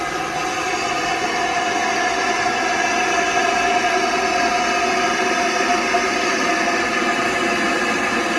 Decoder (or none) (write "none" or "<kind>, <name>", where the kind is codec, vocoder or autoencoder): none